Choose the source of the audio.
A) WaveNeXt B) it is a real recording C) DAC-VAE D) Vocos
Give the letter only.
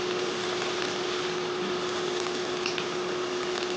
B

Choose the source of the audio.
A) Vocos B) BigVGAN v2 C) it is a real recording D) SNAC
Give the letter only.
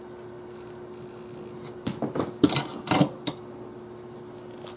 C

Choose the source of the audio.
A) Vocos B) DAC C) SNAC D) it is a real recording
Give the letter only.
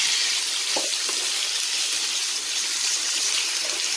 D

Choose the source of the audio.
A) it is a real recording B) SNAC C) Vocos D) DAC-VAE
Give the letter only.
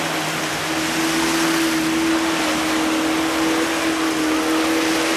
A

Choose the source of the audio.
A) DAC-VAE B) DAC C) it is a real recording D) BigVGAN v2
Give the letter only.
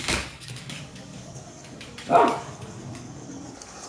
B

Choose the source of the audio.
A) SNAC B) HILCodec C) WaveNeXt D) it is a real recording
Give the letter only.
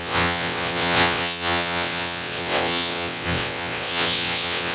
C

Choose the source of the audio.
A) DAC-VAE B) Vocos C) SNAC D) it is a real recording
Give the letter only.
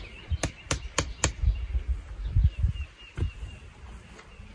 D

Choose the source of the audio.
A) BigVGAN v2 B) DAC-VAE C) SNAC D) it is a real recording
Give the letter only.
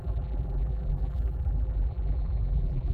A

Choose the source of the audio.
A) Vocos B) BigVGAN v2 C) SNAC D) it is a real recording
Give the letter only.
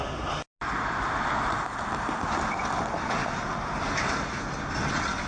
D